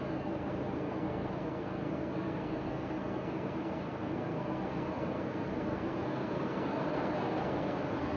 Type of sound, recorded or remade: remade